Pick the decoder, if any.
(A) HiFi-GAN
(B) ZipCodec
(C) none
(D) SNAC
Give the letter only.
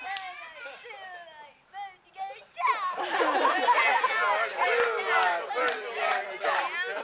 C